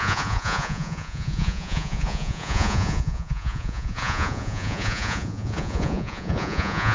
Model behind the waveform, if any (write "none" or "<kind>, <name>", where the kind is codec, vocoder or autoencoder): vocoder, Vocos